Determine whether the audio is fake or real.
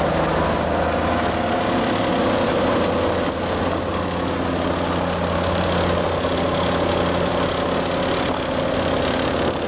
real